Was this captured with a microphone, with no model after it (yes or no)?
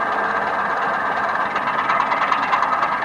yes